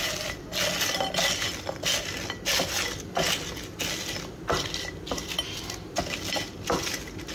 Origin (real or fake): real